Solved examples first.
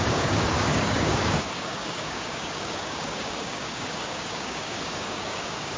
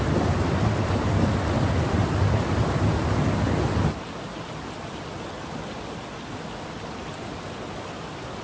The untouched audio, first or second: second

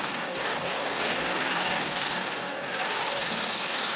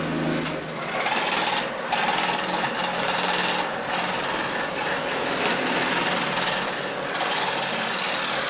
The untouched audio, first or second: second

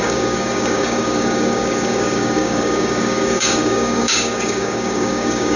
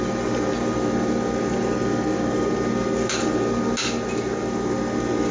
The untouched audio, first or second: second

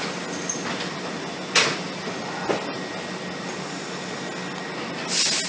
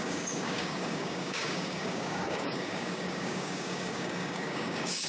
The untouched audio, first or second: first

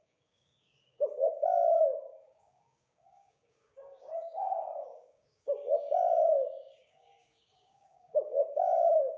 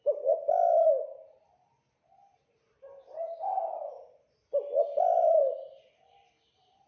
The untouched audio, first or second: second